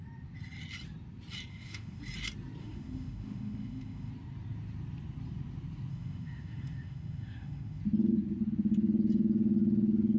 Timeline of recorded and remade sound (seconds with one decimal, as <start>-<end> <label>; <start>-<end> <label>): 0.0-1.5 recorded; 1.5-2.0 remade; 2.0-2.6 recorded; 2.6-4.1 remade; 4.1-5.9 recorded; 5.9-7.8 remade; 7.8-10.2 recorded